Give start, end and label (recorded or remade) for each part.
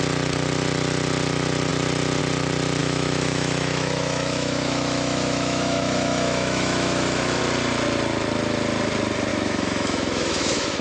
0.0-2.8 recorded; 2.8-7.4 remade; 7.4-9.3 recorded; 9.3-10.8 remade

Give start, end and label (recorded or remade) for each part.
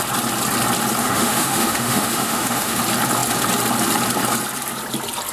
0.0-1.0 recorded; 1.0-2.8 remade; 2.8-5.3 recorded